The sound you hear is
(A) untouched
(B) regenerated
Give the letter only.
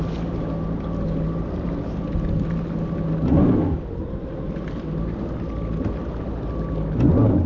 A